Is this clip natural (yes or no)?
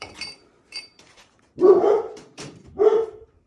no